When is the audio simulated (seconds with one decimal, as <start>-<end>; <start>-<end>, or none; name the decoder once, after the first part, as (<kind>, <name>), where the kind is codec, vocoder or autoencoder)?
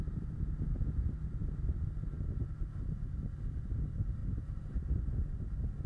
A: none